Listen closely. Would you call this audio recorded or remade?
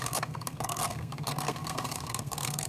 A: remade